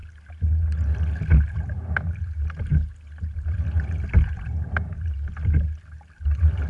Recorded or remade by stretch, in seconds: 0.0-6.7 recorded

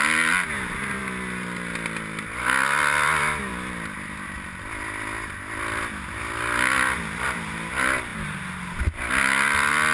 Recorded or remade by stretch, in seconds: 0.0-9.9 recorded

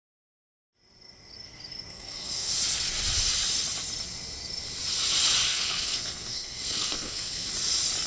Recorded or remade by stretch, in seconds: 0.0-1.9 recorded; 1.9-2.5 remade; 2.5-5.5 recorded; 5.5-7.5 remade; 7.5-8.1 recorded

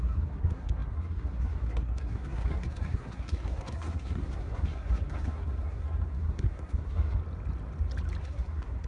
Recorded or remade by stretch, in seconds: 0.0-7.2 remade; 7.2-8.2 recorded; 8.2-8.9 remade

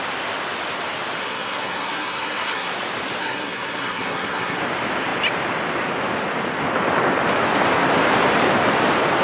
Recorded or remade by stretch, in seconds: 0.0-1.2 recorded; 1.2-2.7 remade; 2.7-3.2 recorded; 3.2-4.6 remade; 4.6-9.2 recorded

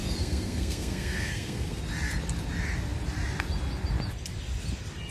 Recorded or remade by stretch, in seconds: 0.0-1.8 remade; 1.8-5.1 recorded

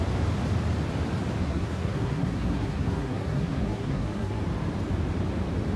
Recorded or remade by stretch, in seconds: 0.0-1.4 recorded; 1.4-4.4 remade; 4.4-5.8 recorded

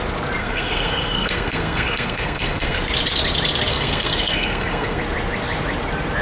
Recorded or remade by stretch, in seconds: 0.0-0.4 recorded; 0.4-2.8 remade; 2.8-3.7 recorded; 3.7-5.0 remade; 5.0-6.2 recorded